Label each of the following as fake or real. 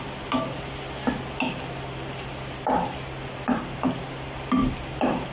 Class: real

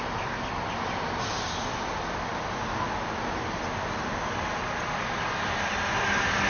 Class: real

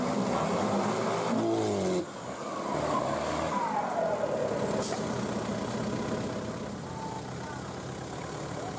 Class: real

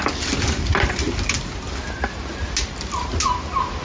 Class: real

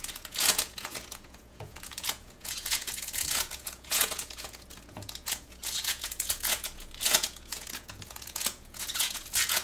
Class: fake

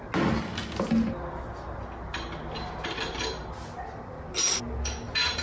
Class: real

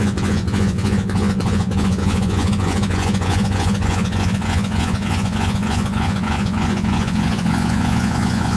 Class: fake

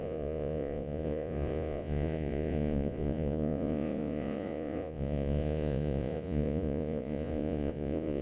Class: fake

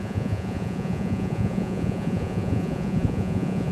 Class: fake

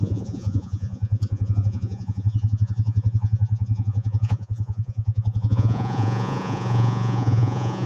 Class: fake